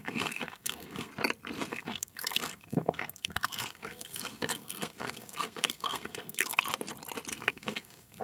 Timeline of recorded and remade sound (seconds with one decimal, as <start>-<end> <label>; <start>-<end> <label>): 0.0-1.1 remade; 1.1-1.7 recorded; 1.7-6.6 remade; 6.6-7.3 recorded; 7.3-8.2 remade